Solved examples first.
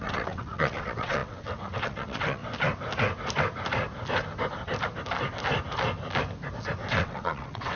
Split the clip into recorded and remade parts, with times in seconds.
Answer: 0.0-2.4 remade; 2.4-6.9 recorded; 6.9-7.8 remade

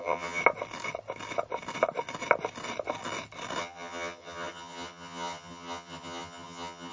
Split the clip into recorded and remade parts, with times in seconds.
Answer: 0.0-0.4 remade; 0.4-3.6 recorded; 3.6-6.9 remade

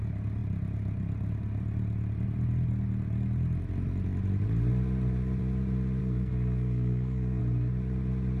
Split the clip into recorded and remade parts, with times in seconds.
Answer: 0.0-6.0 recorded; 6.0-7.4 remade; 7.4-8.4 recorded

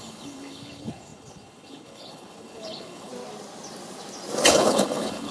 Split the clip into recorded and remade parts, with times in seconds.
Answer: 0.0-3.1 remade; 3.1-4.5 recorded; 4.5-5.3 remade

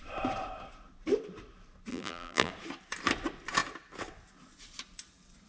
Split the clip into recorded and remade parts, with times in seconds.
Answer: 0.0-1.9 recorded; 1.9-2.5 remade; 2.5-5.5 recorded

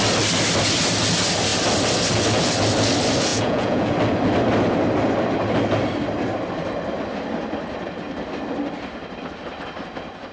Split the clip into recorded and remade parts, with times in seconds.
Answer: 0.0-3.3 recorded; 3.3-3.9 remade; 3.9-10.3 recorded

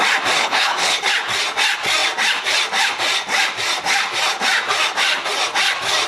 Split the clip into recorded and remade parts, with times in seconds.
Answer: 0.0-0.4 recorded; 0.4-1.1 remade; 1.1-6.1 recorded